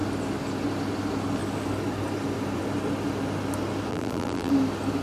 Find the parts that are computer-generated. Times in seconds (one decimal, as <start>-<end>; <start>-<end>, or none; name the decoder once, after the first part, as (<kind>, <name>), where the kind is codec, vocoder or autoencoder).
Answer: 3.9-4.5 (vocoder, BigVGAN v2)